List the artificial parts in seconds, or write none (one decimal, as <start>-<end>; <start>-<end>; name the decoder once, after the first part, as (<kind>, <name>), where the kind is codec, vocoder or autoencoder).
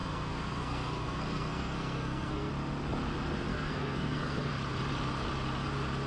0.0-2.5 (codec, SNAC); 3.5-4.5